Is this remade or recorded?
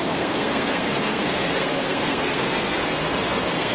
remade